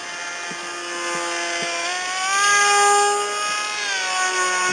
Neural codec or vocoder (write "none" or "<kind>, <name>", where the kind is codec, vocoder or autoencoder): none